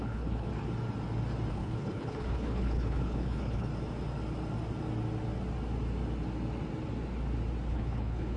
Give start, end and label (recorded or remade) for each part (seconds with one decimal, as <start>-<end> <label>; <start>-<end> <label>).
0.0-0.5 remade; 0.5-1.5 recorded; 1.5-3.7 remade; 3.7-7.7 recorded; 7.7-8.4 remade